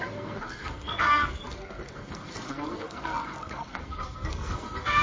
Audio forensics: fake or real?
fake